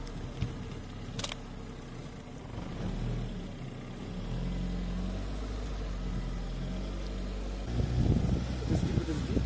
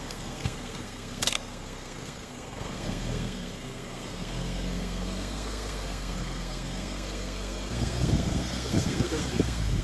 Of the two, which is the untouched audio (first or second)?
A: first